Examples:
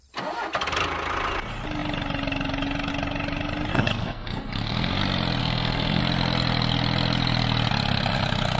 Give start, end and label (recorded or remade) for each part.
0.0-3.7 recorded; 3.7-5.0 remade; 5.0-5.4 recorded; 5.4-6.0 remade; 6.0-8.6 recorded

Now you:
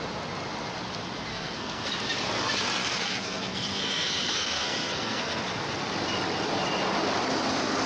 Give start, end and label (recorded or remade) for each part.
0.0-1.3 recorded; 1.3-1.9 remade; 1.9-2.8 recorded; 2.8-5.4 remade; 5.4-7.9 recorded

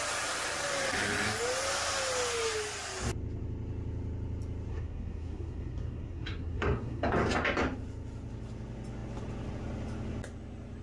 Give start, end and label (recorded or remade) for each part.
0.0-4.7 recorded; 4.7-7.1 remade; 7.1-10.8 recorded

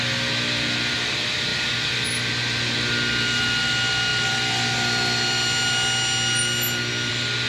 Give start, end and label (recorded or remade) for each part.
0.0-7.5 recorded

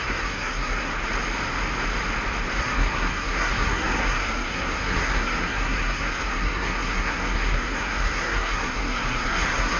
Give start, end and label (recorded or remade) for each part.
0.0-0.9 remade; 0.9-2.6 recorded; 2.6-9.8 remade

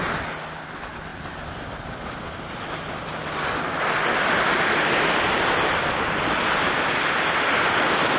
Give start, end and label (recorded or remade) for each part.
0.0-8.2 recorded

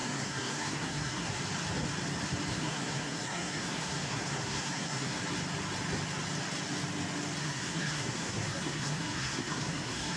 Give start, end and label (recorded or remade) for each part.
0.0-1.4 remade; 1.4-2.5 recorded; 2.5-5.2 remade; 5.2-7.4 recorded; 7.4-10.2 remade

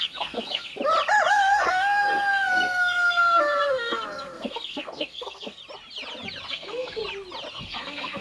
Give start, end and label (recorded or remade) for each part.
0.0-0.7 remade; 0.7-1.3 recorded; 1.3-5.6 remade; 5.6-6.5 recorded; 6.5-7.0 remade; 7.0-7.5 recorded; 7.5-8.2 remade